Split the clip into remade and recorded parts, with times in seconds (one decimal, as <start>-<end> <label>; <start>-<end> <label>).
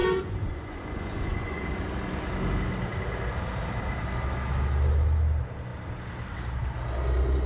0.0-1.6 remade; 1.6-7.5 recorded